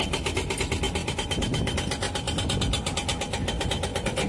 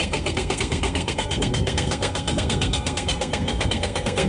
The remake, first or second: second